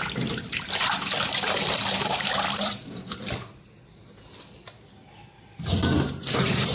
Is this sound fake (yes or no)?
yes